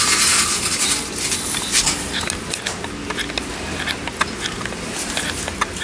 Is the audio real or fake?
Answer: real